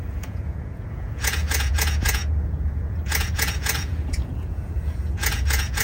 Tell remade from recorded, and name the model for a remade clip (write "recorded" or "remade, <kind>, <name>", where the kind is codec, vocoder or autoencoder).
remade, vocoder, Vocos